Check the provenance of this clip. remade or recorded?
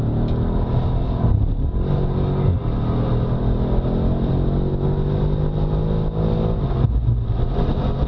recorded